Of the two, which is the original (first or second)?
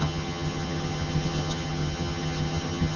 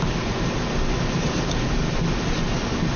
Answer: second